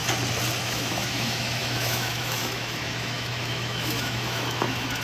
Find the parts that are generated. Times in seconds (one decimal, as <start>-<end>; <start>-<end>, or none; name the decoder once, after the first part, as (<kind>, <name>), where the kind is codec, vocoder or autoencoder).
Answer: 0.6-5.0 (autoencoder, DAC-VAE)